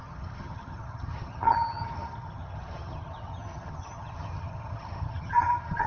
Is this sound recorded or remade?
remade